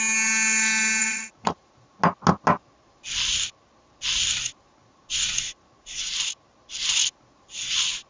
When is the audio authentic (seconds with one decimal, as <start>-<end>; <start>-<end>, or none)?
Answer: 0.0-1.0; 2.0-4.8; 6.1-8.1